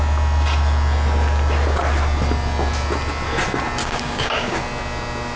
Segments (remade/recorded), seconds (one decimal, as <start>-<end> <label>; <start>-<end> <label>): 0.0-3.8 recorded; 3.8-4.6 remade; 4.6-5.4 recorded

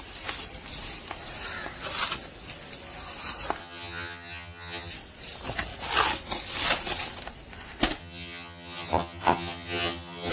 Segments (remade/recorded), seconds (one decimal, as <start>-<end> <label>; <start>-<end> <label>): 0.0-3.6 recorded; 3.6-4.9 remade; 4.9-8.0 recorded; 8.0-10.3 remade

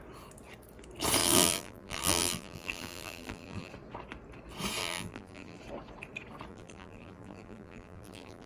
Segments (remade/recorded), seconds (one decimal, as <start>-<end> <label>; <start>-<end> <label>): 0.0-1.2 recorded; 1.2-3.7 remade; 3.7-4.8 recorded; 4.8-5.6 remade; 5.6-6.5 recorded; 6.5-8.5 remade